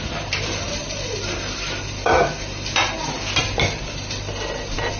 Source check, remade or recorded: recorded